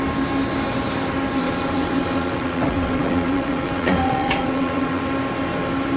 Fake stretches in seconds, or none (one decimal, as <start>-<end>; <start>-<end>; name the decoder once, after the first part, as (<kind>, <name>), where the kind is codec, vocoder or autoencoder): 1.4-5.0 (vocoder, WaveNeXt)

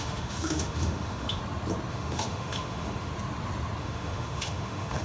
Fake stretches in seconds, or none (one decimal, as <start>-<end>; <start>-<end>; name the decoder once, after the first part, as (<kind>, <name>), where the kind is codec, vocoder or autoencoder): 0.0-1.4 (autoencoder, DAC-VAE); 1.9-3.1; 3.8-5.0

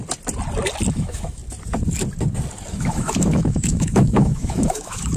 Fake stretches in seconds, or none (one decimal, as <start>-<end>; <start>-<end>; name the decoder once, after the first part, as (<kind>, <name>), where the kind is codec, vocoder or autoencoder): 0.9-1.4 (autoencoder, DAC-VAE); 2.7-5.2

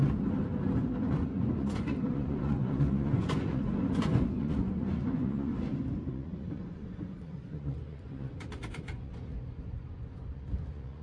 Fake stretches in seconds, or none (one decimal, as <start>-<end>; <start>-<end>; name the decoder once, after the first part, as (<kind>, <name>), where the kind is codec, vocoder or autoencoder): 1.0-5.5 (vocoder, Vocos); 6.1-11.0

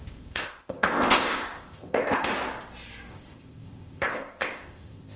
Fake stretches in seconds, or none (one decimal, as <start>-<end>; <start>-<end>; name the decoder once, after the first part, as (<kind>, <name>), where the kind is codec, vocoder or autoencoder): 0.0-2.3 (codec, ZipCodec); 3.1-5.2

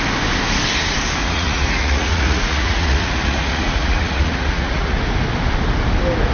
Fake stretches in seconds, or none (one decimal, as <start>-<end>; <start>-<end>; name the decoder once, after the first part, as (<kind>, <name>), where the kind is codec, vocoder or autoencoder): 1.2-5.0 (vocoder, Vocos)

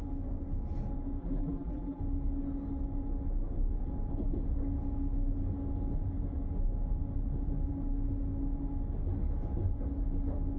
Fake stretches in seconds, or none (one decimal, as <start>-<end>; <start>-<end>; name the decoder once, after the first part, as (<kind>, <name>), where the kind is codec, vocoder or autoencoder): 1.2-2.0 (vocoder, BigVGAN v2)